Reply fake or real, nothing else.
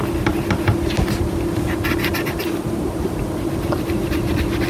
real